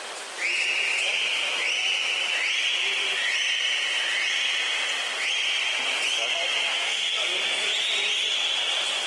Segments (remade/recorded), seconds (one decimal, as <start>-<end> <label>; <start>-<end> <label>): 0.0-6.7 recorded; 6.7-7.4 remade; 7.4-9.1 recorded